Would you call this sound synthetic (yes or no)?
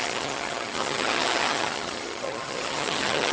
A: yes